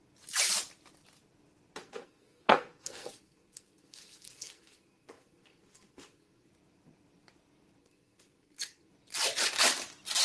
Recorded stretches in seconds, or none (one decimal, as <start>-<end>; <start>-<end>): 0.0-1.8; 6.5-7.8; 8.9-10.2